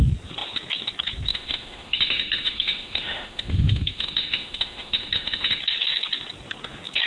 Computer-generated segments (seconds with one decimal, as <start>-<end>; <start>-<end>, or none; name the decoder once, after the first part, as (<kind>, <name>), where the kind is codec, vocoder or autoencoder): 1.3-5.6 (autoencoder, DAC-VAE)